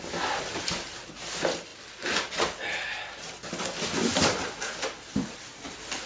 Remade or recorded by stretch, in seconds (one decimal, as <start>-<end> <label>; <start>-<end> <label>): 0.0-6.1 recorded